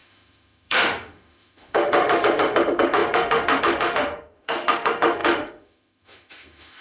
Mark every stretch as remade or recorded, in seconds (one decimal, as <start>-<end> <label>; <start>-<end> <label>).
0.0-6.8 remade

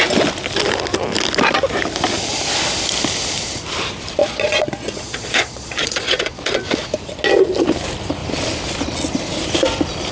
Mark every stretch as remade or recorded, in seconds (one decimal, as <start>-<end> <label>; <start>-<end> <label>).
0.0-4.2 recorded; 4.2-6.6 remade; 6.6-10.1 recorded